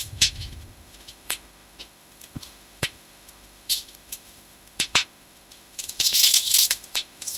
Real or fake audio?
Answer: fake